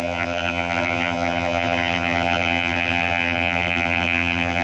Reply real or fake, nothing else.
fake